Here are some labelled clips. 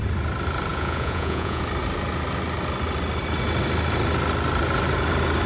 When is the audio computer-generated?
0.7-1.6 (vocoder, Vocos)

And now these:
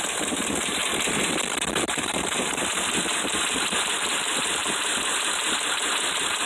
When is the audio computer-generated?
0.0-0.8 (vocoder, BigVGAN v2); 1.9-6.5

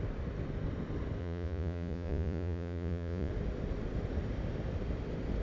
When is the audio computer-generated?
1.2-3.3 (vocoder, Vocos)

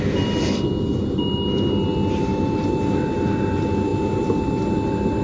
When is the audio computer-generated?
none